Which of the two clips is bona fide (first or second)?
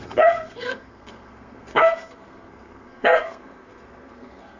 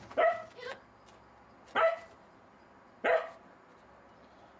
second